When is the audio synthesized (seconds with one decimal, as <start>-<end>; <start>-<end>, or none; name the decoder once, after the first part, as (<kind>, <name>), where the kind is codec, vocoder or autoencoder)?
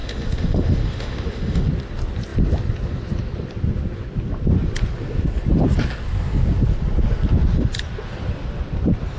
0.0-1.7 (autoencoder, DAC-VAE)